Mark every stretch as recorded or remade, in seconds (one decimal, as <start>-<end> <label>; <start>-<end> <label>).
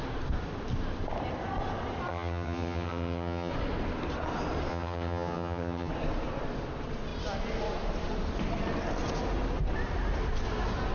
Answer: 0.0-2.1 recorded; 2.1-3.5 remade; 3.5-4.7 recorded; 4.7-5.9 remade; 5.9-10.9 recorded